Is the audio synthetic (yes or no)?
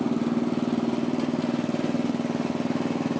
no